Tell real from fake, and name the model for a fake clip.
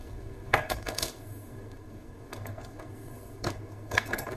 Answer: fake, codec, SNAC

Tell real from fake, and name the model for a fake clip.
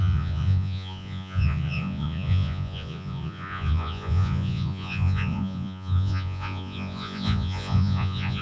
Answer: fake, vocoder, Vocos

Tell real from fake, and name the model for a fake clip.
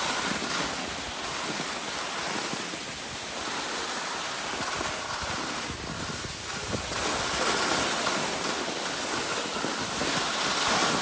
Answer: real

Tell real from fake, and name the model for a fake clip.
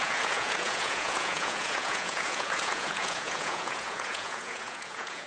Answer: fake, vocoder, Vocos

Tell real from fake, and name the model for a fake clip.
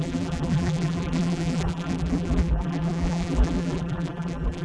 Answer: fake, vocoder, BigVGAN v2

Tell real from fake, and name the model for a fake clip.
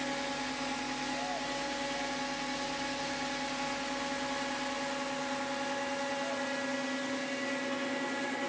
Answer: real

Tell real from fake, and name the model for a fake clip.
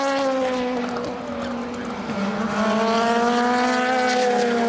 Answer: real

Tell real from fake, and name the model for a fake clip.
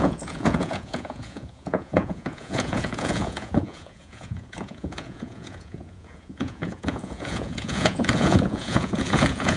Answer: fake, vocoder, Vocos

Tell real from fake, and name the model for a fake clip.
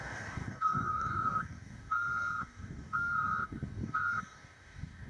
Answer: fake, codec, DAC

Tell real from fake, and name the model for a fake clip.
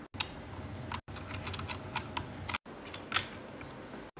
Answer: real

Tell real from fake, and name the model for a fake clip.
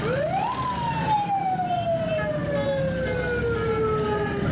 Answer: real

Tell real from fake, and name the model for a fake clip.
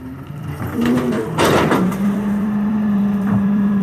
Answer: fake, vocoder, BigVGAN v2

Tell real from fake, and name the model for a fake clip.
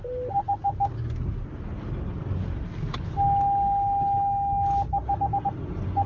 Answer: real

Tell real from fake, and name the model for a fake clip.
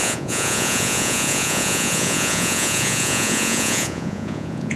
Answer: fake, vocoder, Vocos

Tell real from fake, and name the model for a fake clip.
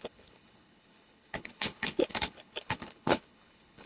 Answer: fake, codec, HILCodec